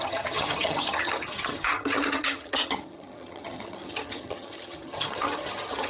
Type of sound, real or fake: fake